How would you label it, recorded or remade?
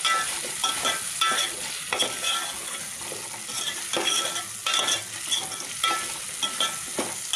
recorded